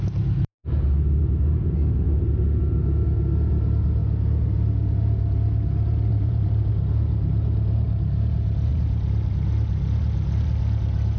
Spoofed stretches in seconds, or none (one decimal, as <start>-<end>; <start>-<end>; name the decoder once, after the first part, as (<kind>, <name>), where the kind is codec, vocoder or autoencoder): 1.2-2.2 (vocoder, BigVGAN v2); 6.1-6.7; 8.7-9.3